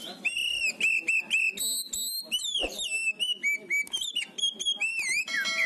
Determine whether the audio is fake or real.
real